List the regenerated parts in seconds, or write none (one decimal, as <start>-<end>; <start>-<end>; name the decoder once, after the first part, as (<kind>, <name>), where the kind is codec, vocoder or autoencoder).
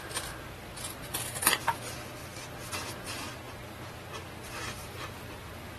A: 4.8-5.8 (vocoder, BigVGAN v2)